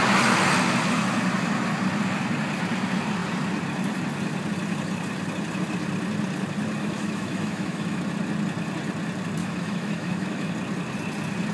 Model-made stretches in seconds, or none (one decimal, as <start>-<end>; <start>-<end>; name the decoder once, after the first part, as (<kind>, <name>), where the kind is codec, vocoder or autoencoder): 6.8-8.0 (autoencoder, DAC-VAE); 9.4-10.5